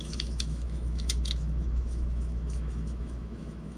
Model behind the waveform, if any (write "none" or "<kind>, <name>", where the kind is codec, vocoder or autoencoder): autoencoder, DAC-VAE